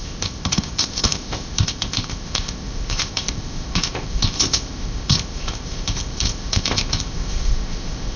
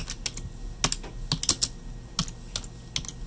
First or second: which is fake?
first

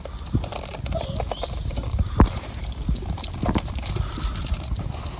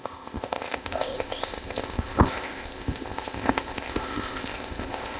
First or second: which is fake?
second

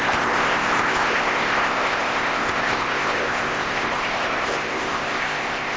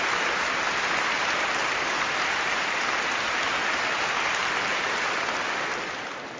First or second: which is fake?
first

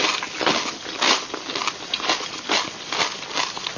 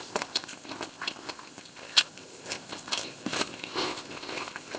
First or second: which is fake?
second